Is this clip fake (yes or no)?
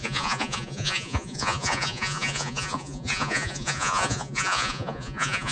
yes